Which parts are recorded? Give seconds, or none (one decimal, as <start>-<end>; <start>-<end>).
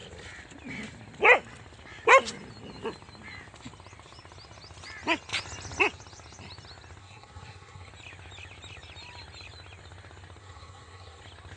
0.0-7.0; 7.9-10.4; 11.2-11.6